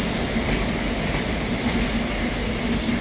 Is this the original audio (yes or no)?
yes